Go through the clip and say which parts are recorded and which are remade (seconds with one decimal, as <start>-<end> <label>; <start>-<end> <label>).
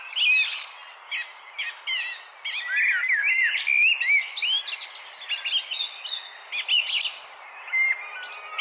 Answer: 0.0-8.6 recorded